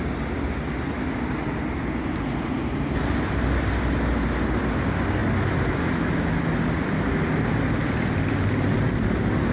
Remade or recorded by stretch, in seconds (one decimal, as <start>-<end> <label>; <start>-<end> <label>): 0.0-9.5 recorded